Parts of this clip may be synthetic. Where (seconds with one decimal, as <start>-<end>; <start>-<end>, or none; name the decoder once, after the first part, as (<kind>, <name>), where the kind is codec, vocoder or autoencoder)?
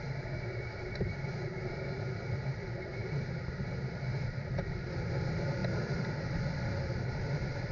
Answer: none